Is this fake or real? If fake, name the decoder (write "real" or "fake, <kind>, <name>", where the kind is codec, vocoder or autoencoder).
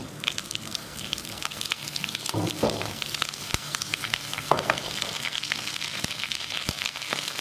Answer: fake, codec, SNAC